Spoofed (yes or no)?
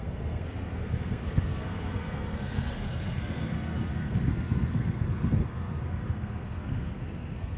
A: yes